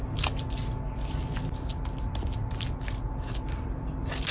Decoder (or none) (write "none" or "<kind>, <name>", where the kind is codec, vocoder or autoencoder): none